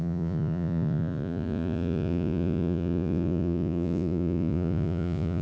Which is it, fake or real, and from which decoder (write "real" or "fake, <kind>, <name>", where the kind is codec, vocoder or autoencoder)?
fake, vocoder, Vocos